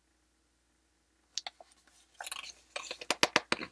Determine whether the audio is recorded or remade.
recorded